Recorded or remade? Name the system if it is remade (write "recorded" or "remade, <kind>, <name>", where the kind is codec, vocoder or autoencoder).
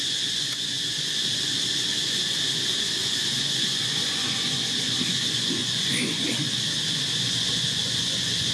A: remade, vocoder, Vocos